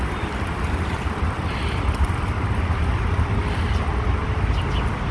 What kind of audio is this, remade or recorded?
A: recorded